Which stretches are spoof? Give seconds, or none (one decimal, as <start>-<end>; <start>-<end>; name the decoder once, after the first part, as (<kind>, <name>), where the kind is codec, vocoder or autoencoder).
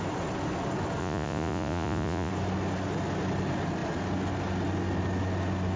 1.0-2.3 (vocoder, Vocos)